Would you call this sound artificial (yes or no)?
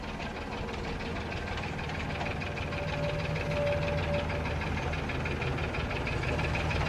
no